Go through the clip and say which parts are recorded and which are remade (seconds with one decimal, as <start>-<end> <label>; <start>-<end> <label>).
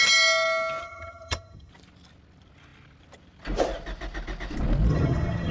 0.0-0.8 recorded; 0.8-1.7 remade; 1.7-4.9 recorded; 4.9-5.5 remade